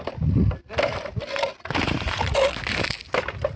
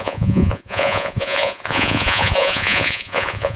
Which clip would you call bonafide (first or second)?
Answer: first